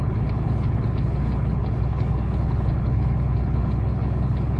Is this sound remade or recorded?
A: remade